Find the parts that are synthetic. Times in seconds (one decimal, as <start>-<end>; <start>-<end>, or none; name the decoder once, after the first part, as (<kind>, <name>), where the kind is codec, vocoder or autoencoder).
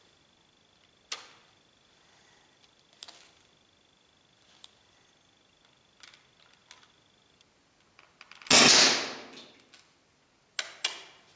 none